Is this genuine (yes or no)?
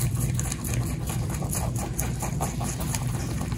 no